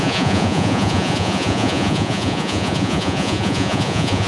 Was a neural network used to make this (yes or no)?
yes